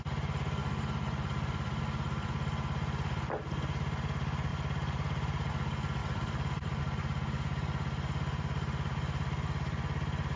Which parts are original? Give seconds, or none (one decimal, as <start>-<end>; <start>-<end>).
0.0-0.6; 1.8-4.5; 5.5-6.0; 6.8-10.4

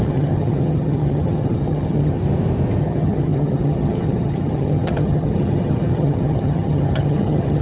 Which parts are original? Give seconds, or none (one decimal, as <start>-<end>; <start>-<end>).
2.2-2.8

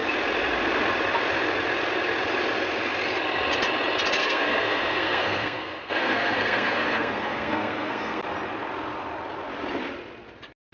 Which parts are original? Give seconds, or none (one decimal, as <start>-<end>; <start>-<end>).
0.0-4.2; 8.2-10.7

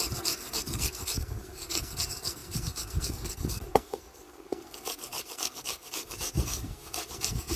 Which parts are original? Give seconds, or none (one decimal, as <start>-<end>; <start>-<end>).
none

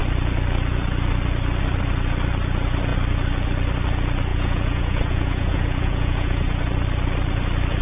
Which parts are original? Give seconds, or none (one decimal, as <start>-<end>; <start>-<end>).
0.0-4.3; 6.6-7.8